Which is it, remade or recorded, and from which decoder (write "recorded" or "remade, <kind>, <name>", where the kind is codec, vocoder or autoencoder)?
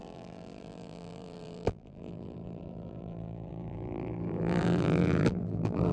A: remade, vocoder, BigVGAN v2